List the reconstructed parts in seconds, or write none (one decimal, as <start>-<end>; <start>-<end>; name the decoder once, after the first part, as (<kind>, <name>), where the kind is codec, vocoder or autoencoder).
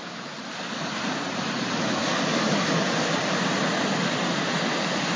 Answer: none